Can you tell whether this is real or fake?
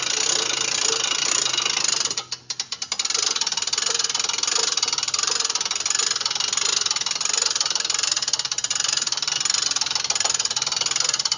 real